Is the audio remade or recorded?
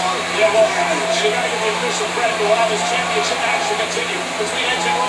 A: recorded